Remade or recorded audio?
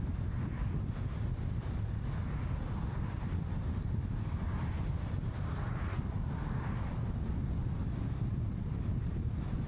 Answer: recorded